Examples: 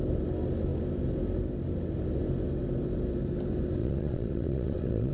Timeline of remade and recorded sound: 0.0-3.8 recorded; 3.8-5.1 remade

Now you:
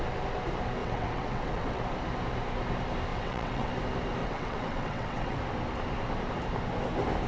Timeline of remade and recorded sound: 0.0-0.8 recorded; 0.8-1.8 remade; 1.8-3.1 recorded; 3.1-3.7 remade; 3.7-4.2 recorded; 4.2-5.4 remade; 5.4-7.3 recorded